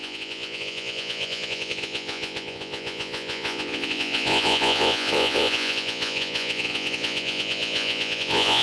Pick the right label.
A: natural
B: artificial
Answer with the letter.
B